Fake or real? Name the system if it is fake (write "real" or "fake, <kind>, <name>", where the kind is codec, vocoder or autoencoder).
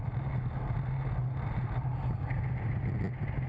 real